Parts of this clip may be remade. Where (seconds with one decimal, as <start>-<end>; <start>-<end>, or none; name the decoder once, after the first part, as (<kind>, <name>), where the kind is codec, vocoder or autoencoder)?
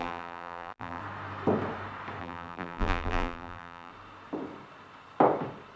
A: 0.0-1.0 (vocoder, BigVGAN v2); 2.2-3.9